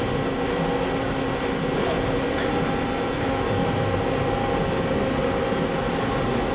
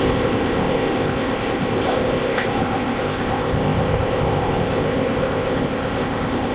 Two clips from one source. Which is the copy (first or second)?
second